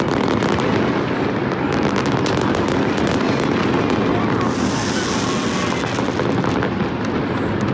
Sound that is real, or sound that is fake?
real